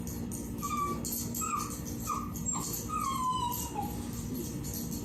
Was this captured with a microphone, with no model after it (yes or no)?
yes